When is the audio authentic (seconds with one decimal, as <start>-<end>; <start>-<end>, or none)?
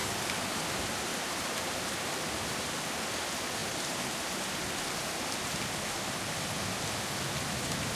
0.6-8.0